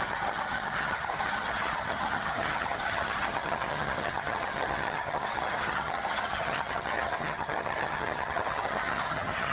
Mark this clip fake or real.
fake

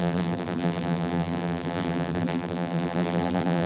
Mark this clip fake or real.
fake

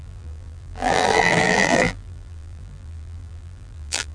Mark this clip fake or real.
fake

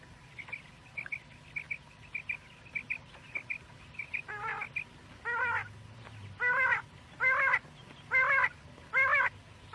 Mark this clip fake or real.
real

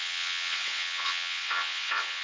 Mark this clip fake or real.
fake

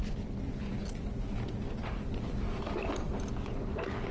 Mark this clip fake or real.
real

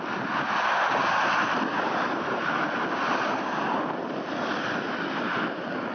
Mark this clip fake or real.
real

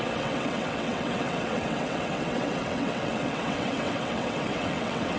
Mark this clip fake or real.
fake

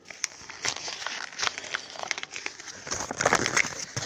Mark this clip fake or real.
real